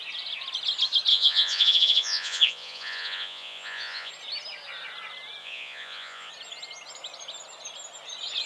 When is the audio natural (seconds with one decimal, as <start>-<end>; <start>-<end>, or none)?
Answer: 0.0-1.1; 4.1-5.4; 6.3-8.5